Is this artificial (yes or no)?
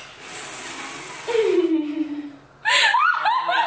no